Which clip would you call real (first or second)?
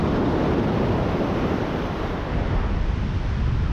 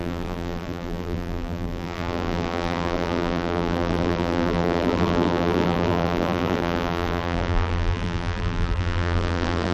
first